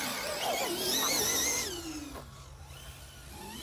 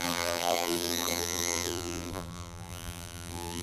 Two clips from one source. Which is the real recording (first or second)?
first